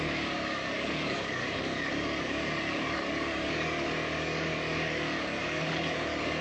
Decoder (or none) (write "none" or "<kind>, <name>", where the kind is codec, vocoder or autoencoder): codec, DAC